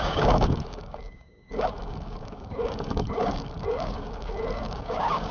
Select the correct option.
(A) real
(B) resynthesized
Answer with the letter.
B